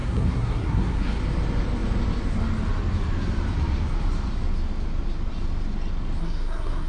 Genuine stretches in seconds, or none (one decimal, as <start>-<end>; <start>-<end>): 1.2-6.2